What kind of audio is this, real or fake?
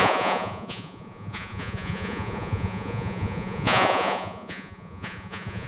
fake